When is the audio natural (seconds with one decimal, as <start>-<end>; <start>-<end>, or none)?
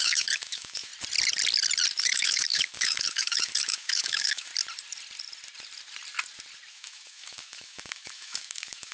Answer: 0.9-2.0; 4.5-6.7